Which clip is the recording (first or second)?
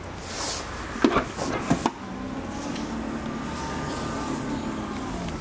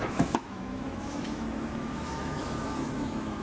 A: first